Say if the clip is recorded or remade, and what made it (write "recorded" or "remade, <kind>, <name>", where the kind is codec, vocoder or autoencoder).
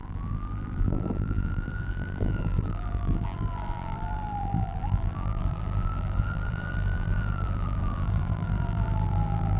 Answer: remade, vocoder, BigVGAN v2